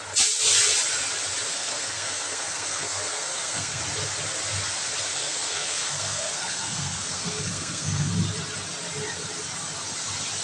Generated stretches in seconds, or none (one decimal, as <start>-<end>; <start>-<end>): 1.5-3.8; 5.1-8.1